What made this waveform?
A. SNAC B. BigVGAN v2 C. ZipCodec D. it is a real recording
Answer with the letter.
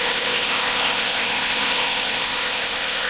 C